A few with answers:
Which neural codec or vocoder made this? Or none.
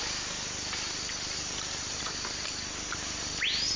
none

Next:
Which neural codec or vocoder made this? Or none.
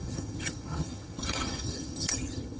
vocoder, HiFi-GAN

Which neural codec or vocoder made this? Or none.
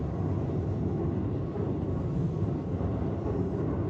none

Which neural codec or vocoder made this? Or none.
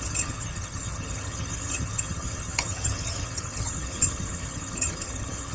vocoder, HiFi-GAN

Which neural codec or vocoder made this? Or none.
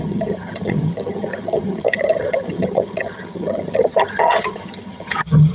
vocoder, HiFi-GAN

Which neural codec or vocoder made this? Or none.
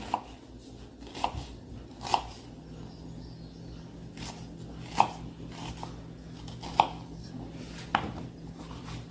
none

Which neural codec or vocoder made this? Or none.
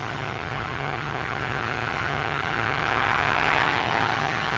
vocoder, HiFi-GAN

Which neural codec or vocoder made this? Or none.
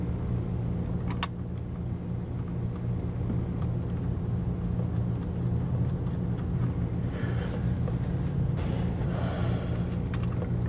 none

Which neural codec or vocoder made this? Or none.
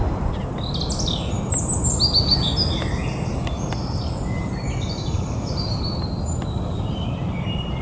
none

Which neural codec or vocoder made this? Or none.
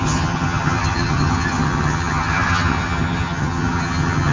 vocoder, HiFi-GAN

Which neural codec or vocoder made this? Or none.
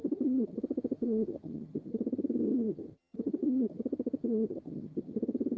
vocoder, HiFi-GAN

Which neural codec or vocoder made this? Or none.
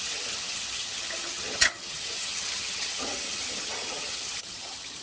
vocoder, HiFi-GAN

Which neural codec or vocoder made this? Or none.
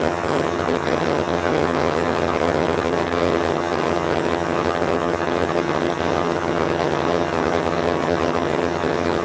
vocoder, HiFi-GAN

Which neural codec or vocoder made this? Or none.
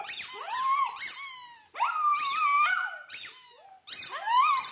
none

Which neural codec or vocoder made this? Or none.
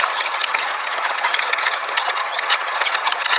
vocoder, HiFi-GAN